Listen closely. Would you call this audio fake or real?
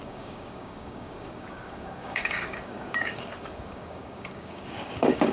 fake